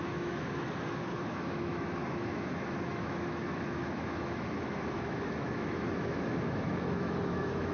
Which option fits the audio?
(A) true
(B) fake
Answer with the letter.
B